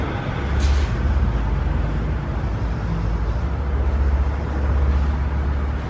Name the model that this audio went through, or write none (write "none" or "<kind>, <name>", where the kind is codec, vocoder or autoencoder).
none